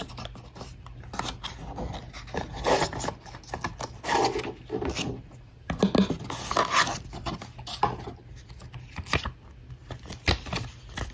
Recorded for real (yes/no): yes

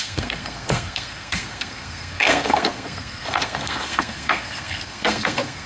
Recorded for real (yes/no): no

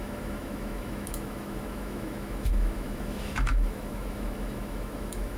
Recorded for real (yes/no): no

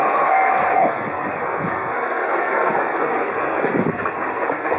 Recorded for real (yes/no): no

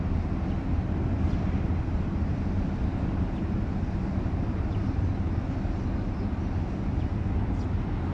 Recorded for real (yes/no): yes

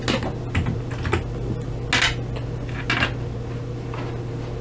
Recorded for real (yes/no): yes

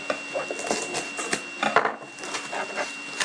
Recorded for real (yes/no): yes